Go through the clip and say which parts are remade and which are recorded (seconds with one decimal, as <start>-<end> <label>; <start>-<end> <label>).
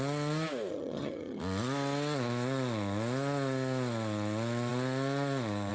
0.0-0.7 recorded; 0.7-1.4 remade; 1.4-5.7 recorded